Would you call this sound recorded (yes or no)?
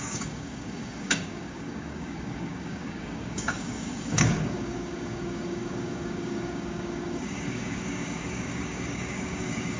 no